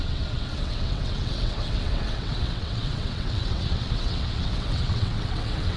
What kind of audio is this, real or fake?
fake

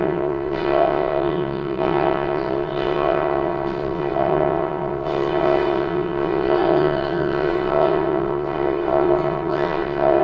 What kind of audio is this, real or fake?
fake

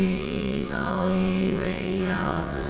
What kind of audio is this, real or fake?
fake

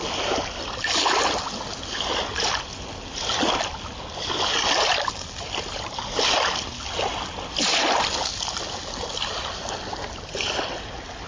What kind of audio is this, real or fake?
real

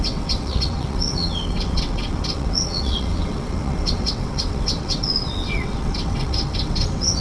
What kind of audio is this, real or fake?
fake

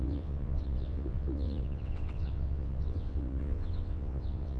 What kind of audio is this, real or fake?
fake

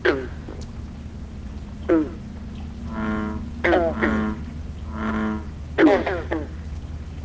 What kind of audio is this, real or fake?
real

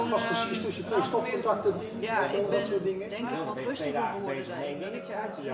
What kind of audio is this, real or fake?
real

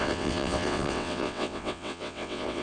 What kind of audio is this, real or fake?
fake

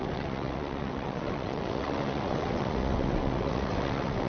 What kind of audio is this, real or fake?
fake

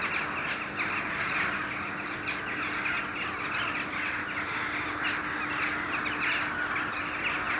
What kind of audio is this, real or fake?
real